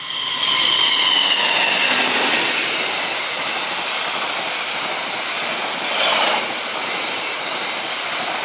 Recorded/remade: recorded